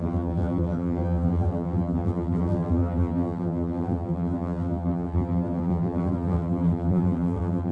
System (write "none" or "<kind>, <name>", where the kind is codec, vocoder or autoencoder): vocoder, BigVGAN v2